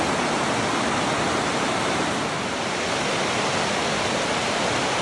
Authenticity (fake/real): real